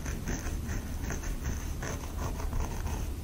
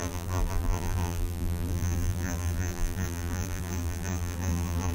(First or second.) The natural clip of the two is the first